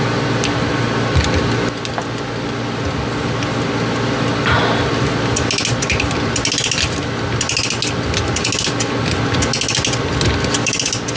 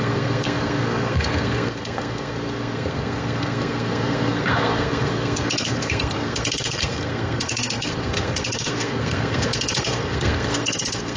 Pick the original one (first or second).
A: first